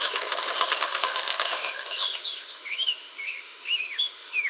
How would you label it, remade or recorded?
remade